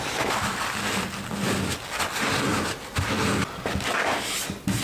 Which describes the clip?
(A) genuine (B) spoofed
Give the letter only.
A